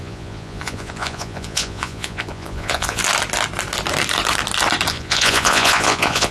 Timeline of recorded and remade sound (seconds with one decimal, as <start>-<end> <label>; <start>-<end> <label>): 0.0-3.0 remade; 3.0-4.9 recorded; 4.9-6.3 remade